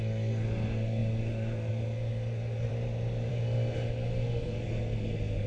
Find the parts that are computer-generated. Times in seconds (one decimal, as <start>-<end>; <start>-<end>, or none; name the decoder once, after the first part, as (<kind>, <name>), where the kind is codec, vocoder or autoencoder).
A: 0.0-2.7 (codec, SNAC); 3.3-5.5